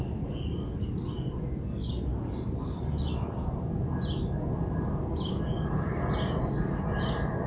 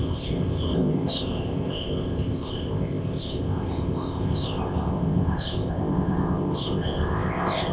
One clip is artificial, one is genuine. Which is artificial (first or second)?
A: second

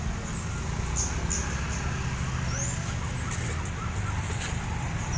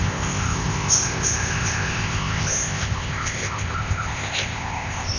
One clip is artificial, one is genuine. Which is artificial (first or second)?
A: second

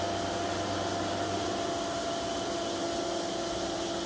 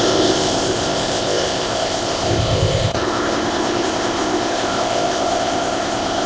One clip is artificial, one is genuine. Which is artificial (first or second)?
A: second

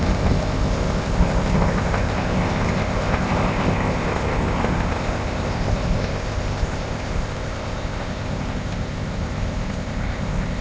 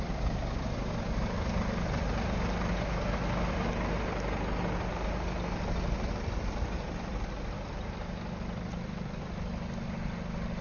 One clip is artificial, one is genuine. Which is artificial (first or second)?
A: first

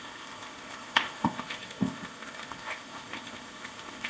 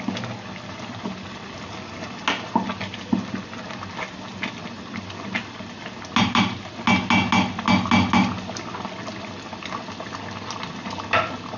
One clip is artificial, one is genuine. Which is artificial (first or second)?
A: first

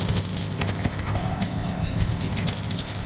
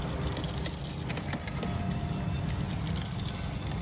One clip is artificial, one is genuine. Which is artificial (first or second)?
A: first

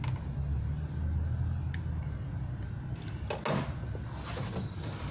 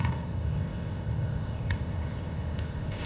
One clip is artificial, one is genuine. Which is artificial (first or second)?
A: second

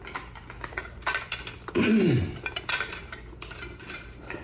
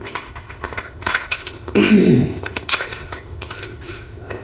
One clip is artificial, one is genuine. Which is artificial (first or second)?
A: second